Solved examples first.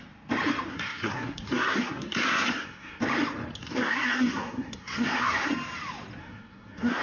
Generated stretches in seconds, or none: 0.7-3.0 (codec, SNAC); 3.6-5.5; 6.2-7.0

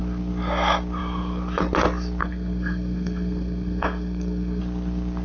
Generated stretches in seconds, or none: 2.2-4.6 (codec, SNAC)

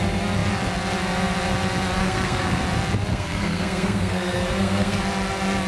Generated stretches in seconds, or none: 2.0-2.6 (codec, SNAC); 3.1-5.0

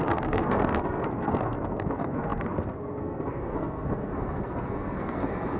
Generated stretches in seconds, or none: 0.0-5.6 (codec, SNAC)

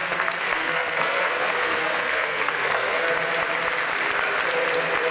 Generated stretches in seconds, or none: 0.0-3.1 (codec, SNAC)

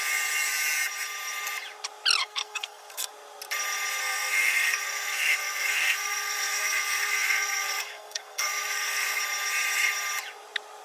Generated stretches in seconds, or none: 2.2-3.1 (codec, SNAC); 4.0-9.2